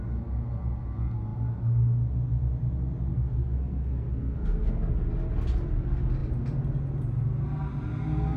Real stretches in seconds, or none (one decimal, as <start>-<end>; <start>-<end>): 0.0-3.1; 4.8-8.4